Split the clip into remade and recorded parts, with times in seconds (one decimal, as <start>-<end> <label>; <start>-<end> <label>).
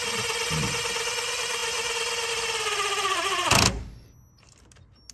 0.0-5.1 recorded